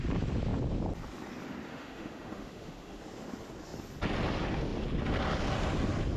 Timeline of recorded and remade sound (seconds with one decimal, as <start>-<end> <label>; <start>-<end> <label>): 0.0-1.7 recorded; 1.7-3.0 remade; 3.0-6.2 recorded